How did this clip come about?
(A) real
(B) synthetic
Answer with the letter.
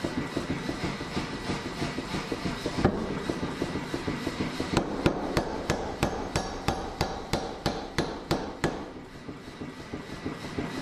B